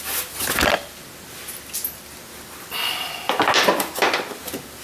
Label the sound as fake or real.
real